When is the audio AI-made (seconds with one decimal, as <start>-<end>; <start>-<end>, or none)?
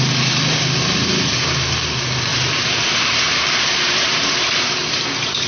2.3-5.5